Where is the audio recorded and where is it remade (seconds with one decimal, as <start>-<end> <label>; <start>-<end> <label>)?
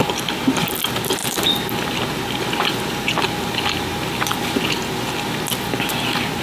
0.0-6.4 recorded